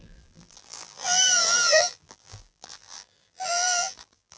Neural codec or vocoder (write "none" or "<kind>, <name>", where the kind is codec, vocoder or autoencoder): vocoder, BigVGAN v2